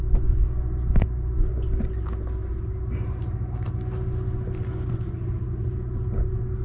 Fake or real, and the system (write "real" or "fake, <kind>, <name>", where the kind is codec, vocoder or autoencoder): real